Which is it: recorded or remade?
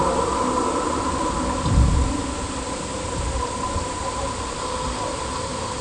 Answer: recorded